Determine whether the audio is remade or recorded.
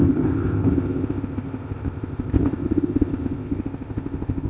remade